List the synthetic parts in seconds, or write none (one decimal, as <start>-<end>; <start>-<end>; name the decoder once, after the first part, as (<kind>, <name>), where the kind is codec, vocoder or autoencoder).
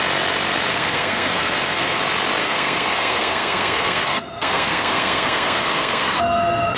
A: 0.7-2.0 (codec, SNAC); 2.4-6.8